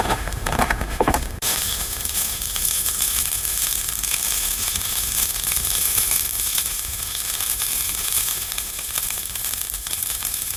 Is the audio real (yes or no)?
no